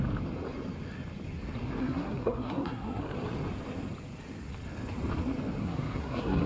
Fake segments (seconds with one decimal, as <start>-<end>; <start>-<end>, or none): 1.8-3.0; 5.6-6.5